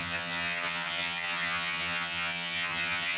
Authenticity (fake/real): fake